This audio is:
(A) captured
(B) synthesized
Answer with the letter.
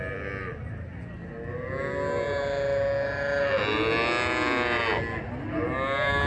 A